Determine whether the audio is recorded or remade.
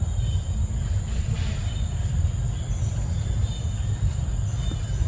recorded